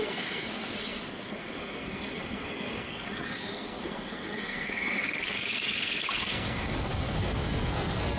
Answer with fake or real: fake